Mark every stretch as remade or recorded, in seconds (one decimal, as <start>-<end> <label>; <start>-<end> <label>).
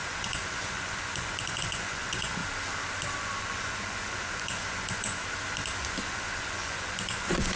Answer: 0.0-2.4 remade; 2.4-3.2 recorded; 3.2-5.2 remade; 5.2-5.8 recorded; 5.8-7.6 remade